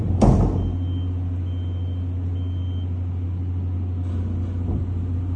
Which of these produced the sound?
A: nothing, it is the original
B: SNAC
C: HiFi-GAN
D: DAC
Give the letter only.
A